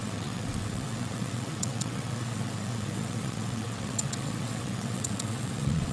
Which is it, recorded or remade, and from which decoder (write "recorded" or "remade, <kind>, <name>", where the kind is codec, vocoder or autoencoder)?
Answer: remade, vocoder, WaveNeXt